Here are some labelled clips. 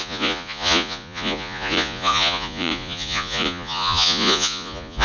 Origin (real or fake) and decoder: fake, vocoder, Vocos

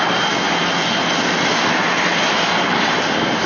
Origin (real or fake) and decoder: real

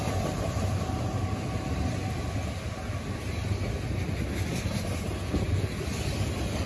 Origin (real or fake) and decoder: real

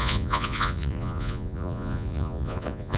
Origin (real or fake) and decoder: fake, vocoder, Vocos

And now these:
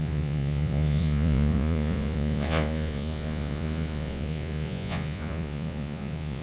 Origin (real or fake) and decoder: fake, vocoder, Vocos